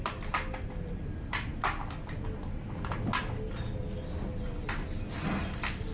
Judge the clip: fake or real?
real